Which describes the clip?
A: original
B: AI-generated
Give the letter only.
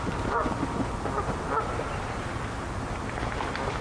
A